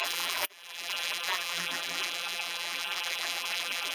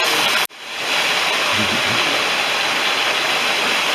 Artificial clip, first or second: first